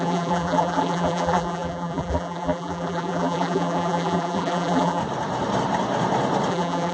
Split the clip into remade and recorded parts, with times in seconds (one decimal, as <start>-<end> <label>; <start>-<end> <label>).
0.0-5.0 remade; 5.0-6.5 recorded; 6.5-6.9 remade